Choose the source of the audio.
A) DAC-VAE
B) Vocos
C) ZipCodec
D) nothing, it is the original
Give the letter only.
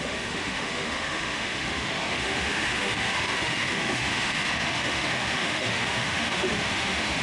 A